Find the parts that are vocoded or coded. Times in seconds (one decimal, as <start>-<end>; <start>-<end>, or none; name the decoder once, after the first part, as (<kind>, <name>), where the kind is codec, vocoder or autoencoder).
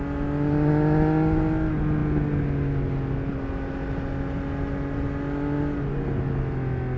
none